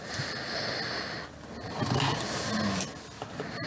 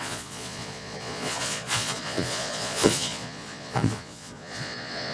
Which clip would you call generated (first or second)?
second